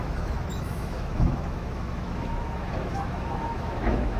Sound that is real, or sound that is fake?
fake